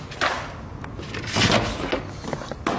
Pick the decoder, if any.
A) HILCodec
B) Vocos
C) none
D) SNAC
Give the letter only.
C